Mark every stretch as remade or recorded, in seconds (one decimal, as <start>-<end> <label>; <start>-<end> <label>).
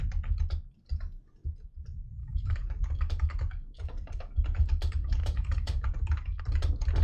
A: 0.0-2.2 recorded; 2.2-6.4 remade; 6.4-7.0 recorded